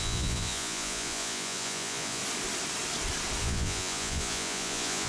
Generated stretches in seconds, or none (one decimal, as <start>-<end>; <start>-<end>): 0.0-2.2; 3.4-5.1